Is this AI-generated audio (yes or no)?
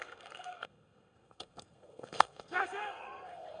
yes